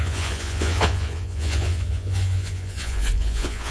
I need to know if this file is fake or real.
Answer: fake